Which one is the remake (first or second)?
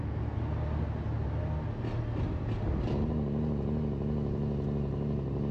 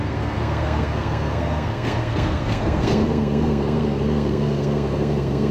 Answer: second